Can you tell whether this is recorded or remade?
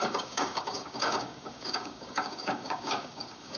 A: remade